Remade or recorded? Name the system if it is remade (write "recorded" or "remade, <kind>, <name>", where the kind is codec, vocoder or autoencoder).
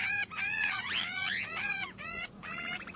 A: remade, vocoder, Vocos